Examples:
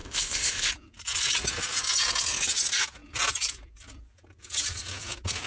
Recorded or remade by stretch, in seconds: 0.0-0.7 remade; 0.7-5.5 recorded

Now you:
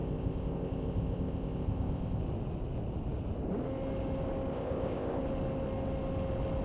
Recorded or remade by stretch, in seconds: 0.0-2.2 remade; 2.2-4.5 recorded; 4.5-5.2 remade; 5.2-6.6 recorded

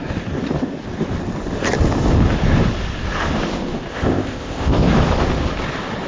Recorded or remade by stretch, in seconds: 0.0-3.9 recorded; 3.9-4.9 remade; 4.9-6.1 recorded

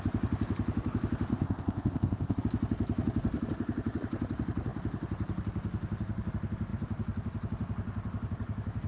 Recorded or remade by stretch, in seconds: 0.0-1.3 recorded; 1.3-2.4 remade; 2.4-8.9 recorded